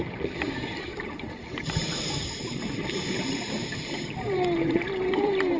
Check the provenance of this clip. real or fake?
fake